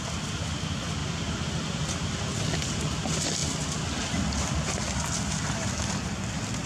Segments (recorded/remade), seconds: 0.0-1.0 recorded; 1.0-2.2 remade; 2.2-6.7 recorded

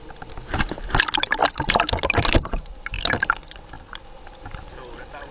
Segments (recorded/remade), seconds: 0.0-5.3 recorded